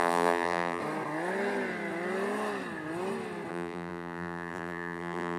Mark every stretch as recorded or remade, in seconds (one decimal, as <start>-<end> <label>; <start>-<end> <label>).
0.0-0.8 remade; 0.8-3.5 recorded; 3.5-5.4 remade